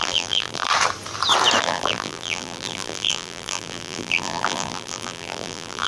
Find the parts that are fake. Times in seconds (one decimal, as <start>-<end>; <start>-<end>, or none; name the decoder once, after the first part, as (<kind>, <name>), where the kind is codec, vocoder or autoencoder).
0.0-0.7 (vocoder, BigVGAN v2); 1.6-5.9